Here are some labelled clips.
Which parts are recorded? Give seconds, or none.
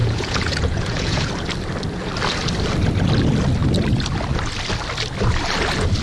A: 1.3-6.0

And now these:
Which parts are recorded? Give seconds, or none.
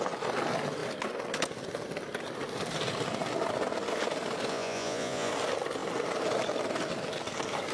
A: 0.0-4.5; 5.3-7.7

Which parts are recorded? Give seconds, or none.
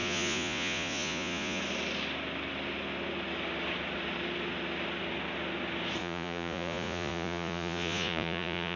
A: 1.6-6.0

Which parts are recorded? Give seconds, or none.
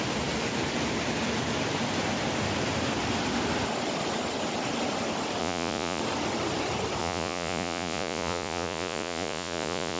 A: 0.0-5.4; 6.0-7.0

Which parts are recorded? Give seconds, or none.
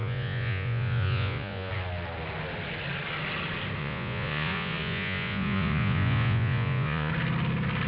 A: 1.7-3.8; 7.1-7.9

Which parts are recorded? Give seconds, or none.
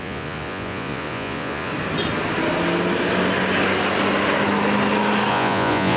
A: 1.7-5.3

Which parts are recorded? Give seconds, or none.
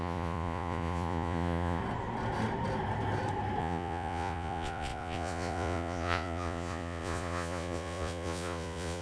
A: 1.8-3.6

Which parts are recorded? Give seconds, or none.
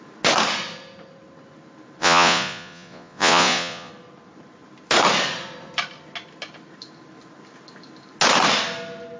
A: 0.0-2.0; 3.9-9.2